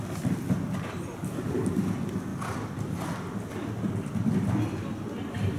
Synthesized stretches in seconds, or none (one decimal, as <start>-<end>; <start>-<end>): none